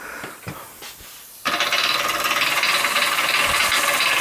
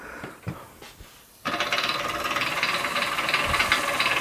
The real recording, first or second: first